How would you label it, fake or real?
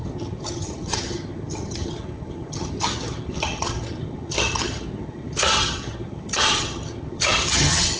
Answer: fake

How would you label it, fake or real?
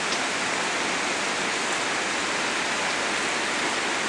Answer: real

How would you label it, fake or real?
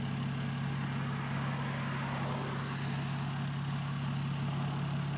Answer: real